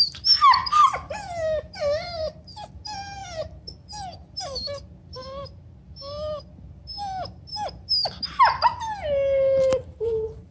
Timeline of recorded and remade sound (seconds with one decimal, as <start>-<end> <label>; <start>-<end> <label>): 0.0-9.8 recorded; 9.8-10.5 remade